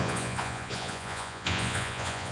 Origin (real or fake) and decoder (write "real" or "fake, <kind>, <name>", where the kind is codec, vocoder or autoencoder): fake, vocoder, Vocos